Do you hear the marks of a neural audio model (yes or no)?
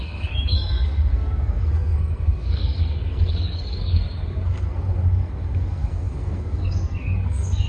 yes